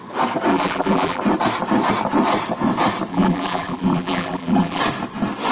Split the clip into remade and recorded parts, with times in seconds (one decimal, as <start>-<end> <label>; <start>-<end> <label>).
0.0-0.5 recorded; 0.5-1.2 remade; 1.2-3.1 recorded; 3.1-4.8 remade; 4.8-5.5 recorded